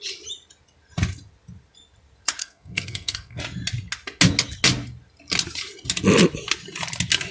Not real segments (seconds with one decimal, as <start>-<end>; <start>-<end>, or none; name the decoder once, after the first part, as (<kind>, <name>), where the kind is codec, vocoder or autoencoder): 2.4-3.4 (codec, SNAC)